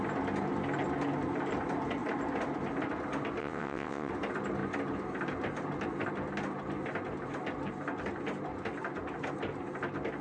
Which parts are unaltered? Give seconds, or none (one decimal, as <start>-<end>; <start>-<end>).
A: 0.0-3.4; 4.1-10.2